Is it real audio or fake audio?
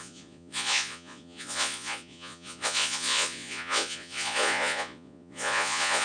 fake